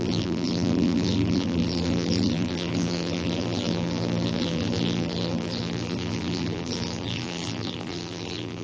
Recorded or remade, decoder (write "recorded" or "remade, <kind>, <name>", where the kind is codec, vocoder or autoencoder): remade, vocoder, BigVGAN v2